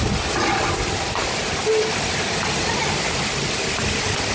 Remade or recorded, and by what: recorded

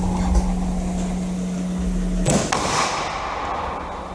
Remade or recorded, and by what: recorded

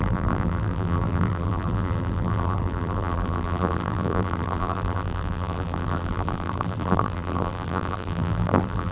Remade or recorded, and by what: remade, vocoder, BigVGAN v2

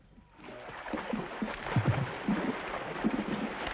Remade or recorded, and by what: remade, vocoder, BigVGAN v2